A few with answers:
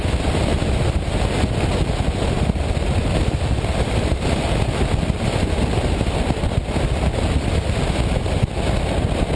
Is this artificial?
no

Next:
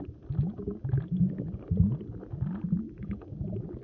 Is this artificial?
no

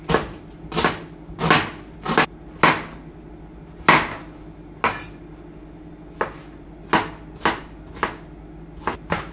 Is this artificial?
no